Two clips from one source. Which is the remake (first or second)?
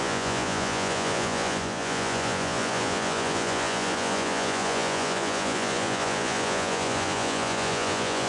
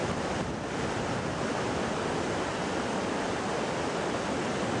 first